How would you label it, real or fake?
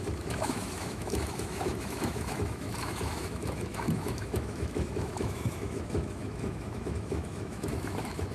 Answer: fake